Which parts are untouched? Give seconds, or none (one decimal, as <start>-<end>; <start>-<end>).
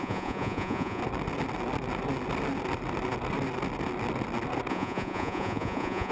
1.0-4.7